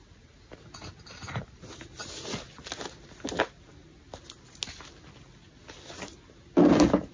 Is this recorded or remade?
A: recorded